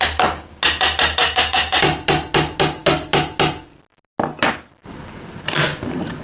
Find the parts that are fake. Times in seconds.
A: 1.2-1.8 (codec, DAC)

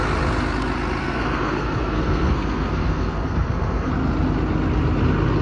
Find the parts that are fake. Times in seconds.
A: 1.0-3.9 (codec, SNAC)

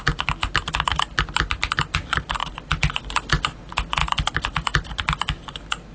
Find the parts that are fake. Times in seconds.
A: none